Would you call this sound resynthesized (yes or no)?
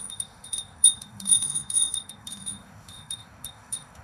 yes